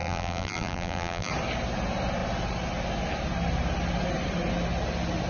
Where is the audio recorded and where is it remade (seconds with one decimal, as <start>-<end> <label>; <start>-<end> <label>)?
0.0-1.3 remade; 1.3-5.3 recorded

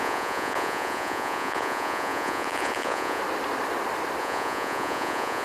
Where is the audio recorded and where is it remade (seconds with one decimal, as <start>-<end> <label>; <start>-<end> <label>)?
0.0-3.2 remade; 3.2-4.2 recorded; 4.2-5.4 remade

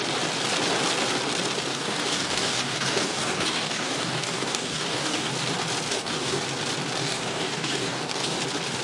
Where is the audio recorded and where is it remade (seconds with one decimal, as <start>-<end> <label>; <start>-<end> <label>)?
0.0-1.7 recorded; 1.7-5.3 remade; 5.3-5.9 recorded; 5.9-6.4 remade; 6.4-7.0 recorded; 7.0-8.4 remade; 8.4-8.8 recorded